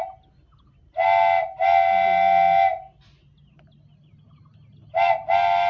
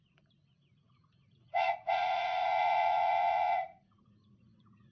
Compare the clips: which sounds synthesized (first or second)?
second